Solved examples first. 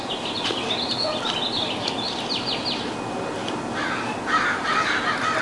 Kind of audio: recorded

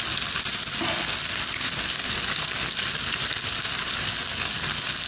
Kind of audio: recorded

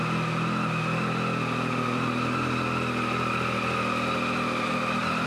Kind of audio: recorded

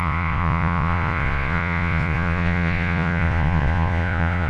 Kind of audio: remade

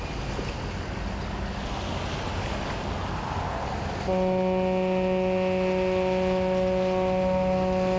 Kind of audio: recorded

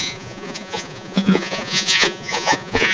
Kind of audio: remade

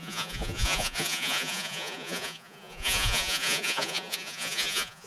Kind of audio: remade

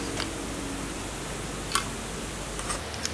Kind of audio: recorded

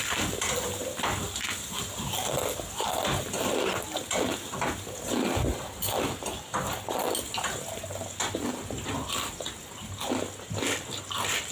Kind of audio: recorded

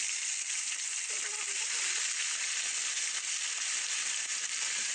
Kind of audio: recorded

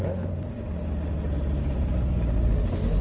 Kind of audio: recorded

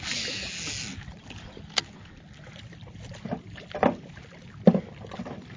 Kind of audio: recorded